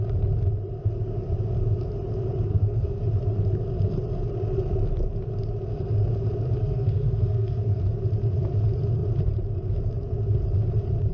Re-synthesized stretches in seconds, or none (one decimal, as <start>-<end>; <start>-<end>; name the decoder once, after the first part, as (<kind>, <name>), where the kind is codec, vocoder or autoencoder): 2.5-3.0 (codec, SNAC); 6.6-7.8